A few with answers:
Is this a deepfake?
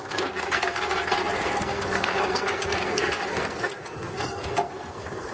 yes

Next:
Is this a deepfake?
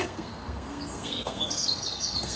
yes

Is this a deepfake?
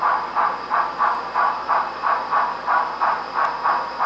no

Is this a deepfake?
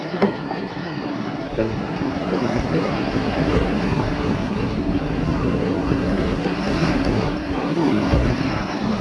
yes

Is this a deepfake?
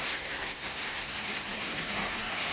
yes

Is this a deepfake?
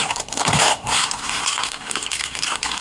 yes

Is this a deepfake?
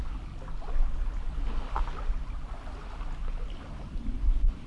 no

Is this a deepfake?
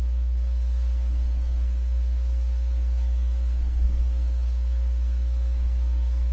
yes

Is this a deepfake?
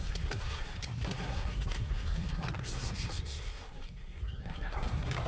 yes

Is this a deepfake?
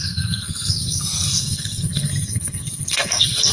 yes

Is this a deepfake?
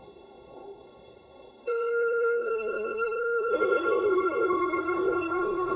yes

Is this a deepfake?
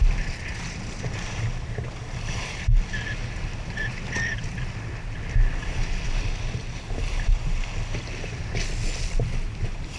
no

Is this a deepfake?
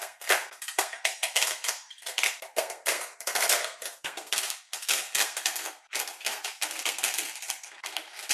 yes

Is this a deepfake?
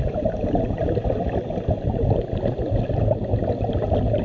no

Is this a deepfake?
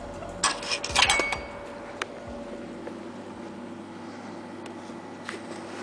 no